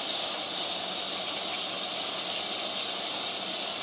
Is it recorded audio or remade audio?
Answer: recorded